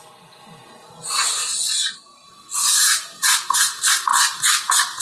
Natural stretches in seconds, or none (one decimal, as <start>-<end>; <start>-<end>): 0.0-1.6; 2.3-5.0

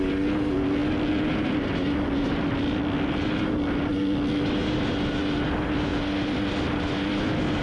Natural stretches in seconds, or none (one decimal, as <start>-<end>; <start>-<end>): 0.0-7.6

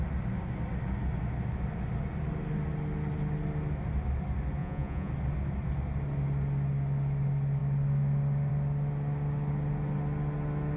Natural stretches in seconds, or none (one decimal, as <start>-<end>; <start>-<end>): 0.0-4.6; 5.1-10.8

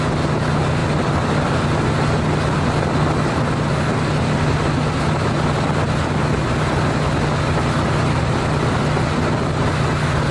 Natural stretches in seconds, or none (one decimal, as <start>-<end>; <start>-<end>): 0.0-10.3

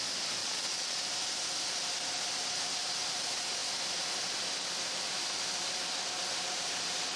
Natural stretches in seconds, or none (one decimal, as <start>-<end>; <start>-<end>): 0.0-0.4; 1.0-7.2

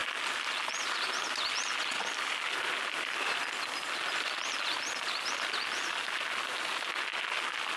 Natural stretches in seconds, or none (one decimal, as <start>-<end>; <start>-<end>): 0.0-7.8

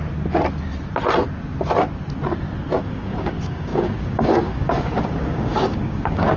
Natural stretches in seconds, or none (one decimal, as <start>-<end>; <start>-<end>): 0.0-2.8